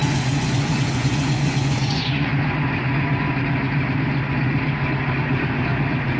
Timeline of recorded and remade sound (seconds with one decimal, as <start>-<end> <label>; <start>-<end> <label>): 0.0-2.3 remade; 2.3-6.2 recorded